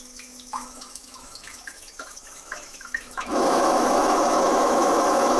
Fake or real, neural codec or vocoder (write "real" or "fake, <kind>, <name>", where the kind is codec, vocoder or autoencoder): fake, autoencoder, DAC-VAE